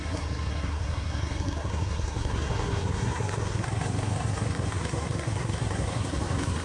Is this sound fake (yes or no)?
yes